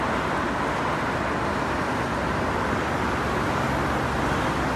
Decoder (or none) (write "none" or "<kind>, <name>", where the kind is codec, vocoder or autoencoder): none